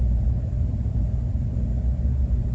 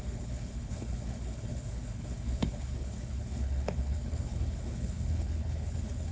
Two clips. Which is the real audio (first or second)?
first